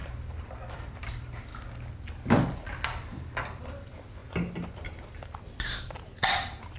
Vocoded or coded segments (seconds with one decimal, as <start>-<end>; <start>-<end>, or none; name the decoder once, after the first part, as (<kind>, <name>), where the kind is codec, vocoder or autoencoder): 0.7-1.5 (vocoder, BigVGAN v2); 3.6-4.2; 5.4-6.8